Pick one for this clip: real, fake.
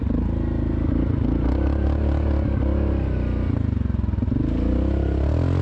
real